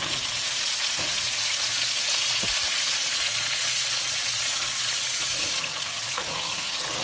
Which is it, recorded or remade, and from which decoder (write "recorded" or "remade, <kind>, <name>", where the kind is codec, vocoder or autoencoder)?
remade, vocoder, Vocos